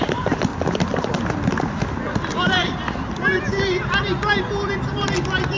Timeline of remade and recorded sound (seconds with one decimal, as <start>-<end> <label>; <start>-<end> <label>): 0.0-0.5 remade; 0.5-2.3 recorded; 2.3-3.5 remade; 3.5-5.0 recorded; 5.0-5.6 remade